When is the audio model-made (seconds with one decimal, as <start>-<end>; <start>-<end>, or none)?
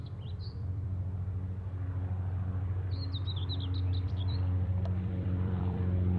0.0-0.9; 3.9-6.2